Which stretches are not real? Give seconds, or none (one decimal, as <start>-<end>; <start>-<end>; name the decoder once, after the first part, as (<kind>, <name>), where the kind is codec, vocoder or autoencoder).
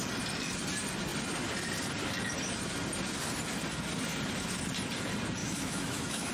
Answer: 5.4-6.3 (autoencoder, DAC-VAE)